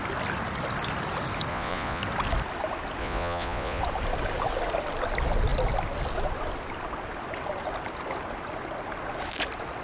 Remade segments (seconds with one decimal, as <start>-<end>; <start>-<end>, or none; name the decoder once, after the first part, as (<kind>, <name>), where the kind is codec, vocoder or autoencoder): 1.5-2.0 (vocoder, Vocos); 3.0-3.8

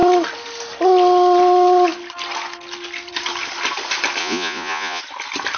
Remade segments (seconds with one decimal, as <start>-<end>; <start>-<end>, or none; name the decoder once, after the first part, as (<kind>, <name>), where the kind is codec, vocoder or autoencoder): 4.2-5.0 (vocoder, Vocos)

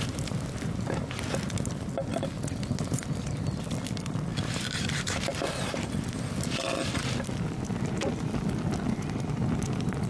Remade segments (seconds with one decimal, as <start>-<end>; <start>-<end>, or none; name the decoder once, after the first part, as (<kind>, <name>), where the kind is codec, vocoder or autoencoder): none

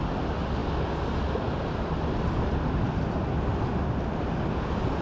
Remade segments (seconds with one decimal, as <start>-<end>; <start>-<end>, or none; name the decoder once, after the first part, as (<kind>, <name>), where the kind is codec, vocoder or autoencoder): none